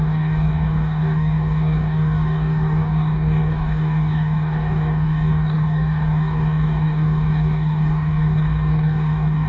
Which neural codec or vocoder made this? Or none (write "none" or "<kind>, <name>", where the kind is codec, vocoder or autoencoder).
codec, DAC